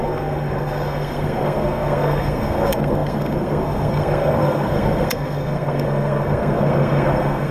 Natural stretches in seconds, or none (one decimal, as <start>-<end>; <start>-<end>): none